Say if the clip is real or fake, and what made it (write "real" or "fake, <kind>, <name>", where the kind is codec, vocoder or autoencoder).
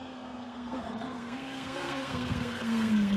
fake, codec, SNAC